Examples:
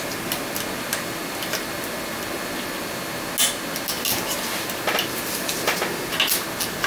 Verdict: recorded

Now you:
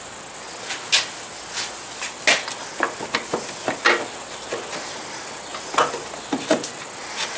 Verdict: recorded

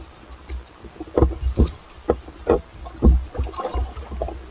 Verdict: recorded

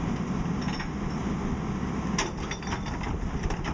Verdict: recorded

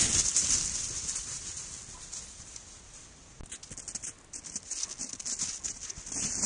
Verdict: recorded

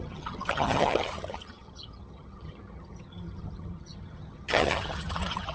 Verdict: remade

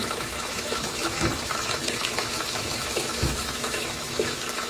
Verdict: remade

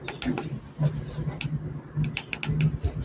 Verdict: recorded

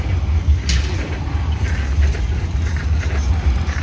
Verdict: recorded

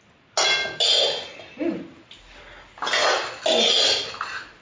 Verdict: recorded